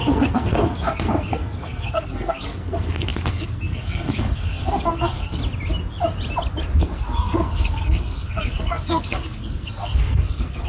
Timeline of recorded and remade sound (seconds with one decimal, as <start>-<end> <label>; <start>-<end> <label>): 0.0-5.4 remade; 5.4-6.8 recorded; 6.8-10.7 remade